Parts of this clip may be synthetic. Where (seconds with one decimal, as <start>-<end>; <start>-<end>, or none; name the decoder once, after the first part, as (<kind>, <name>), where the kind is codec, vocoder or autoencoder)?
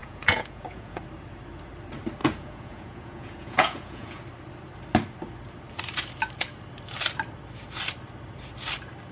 0.0-1.0 (vocoder, Vocos); 2.2-4.2